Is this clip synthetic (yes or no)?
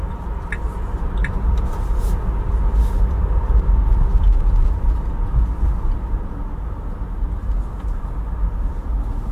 no